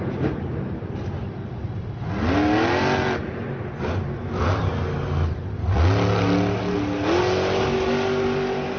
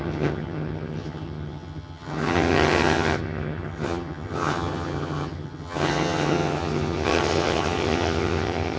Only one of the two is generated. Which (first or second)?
second